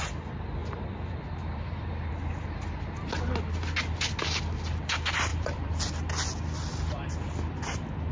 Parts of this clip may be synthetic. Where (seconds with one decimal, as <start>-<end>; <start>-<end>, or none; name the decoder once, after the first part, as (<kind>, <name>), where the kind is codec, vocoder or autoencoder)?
0.6-2.1 (vocoder, BigVGAN v2); 5.3-6.0